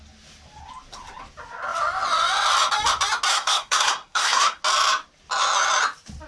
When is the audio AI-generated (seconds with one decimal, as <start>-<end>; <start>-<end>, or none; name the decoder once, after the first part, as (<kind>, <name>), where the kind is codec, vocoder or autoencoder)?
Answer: 3.3-4.6 (codec, SNAC)